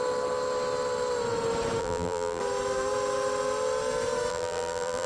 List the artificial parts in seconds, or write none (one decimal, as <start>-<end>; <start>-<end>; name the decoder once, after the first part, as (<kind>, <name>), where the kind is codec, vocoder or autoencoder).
1.8-2.4 (vocoder, BigVGAN v2); 4.3-5.1